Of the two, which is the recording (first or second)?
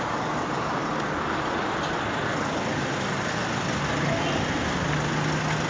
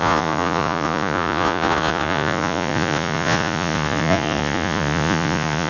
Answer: first